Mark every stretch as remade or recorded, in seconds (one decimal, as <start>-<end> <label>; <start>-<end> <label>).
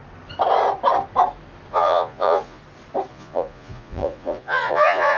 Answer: 0.0-1.7 recorded; 1.7-2.6 remade; 2.6-3.1 recorded; 3.1-5.2 remade